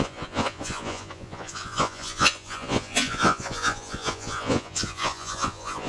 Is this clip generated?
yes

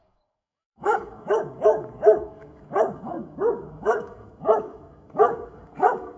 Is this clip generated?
yes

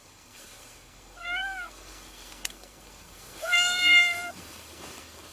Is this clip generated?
yes